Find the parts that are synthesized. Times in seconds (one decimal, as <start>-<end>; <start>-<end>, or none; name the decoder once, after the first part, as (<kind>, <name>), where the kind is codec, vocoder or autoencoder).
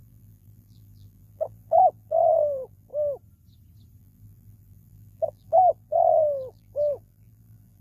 0.0-2.9 (vocoder, BigVGAN v2); 4.0-7.8